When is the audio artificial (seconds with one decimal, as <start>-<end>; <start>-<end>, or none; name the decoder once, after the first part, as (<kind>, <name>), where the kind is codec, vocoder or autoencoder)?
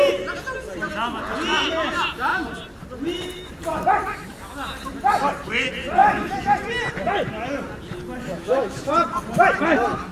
8.3-8.9 (autoencoder, DAC-VAE)